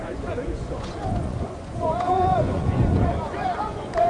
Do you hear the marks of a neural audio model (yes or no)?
yes